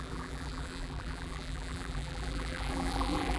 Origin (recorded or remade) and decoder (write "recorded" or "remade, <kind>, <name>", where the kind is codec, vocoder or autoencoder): remade, vocoder, BigVGAN v2